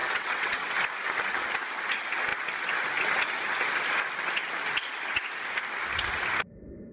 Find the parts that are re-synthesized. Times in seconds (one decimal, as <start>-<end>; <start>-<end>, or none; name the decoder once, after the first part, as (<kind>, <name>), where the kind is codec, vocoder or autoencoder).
0.0-0.7 (vocoder, WaveNeXt)